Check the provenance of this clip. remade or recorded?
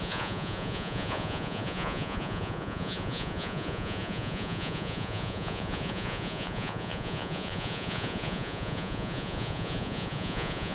remade